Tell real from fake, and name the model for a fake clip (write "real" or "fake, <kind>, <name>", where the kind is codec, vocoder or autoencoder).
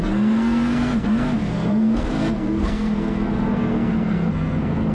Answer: fake, codec, SNAC